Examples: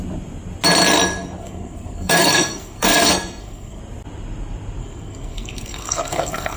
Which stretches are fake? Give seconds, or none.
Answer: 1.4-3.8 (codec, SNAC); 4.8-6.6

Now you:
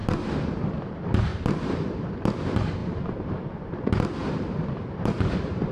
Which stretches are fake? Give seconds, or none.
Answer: 0.0-0.6 (vocoder, BigVGAN v2); 1.3-2.1; 2.8-3.8; 4.2-5.7